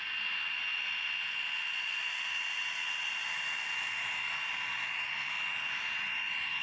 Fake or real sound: real